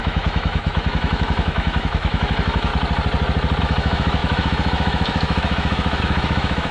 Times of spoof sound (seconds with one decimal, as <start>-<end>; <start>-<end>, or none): 0.0-2.7; 3.6-6.7

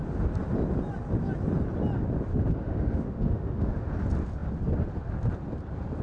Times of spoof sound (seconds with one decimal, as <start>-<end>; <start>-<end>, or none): 2.3-3.9

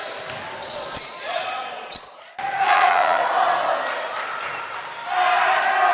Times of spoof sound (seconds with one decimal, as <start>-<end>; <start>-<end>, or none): 0.6-3.2

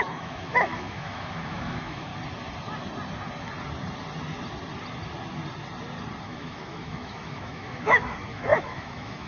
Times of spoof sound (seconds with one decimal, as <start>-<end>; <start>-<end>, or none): 0.0-2.1; 6.2-9.3

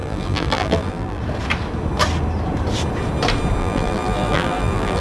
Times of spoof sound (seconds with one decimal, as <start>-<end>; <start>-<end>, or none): 0.0-1.2; 3.6-5.0

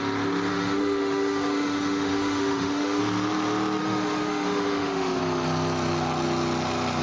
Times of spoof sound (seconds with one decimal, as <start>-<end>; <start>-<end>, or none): 0.5-3.0; 3.8-5.2

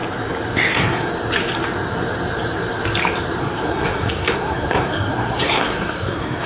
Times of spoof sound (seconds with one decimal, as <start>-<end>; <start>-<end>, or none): 0.7-1.1; 3.4-6.5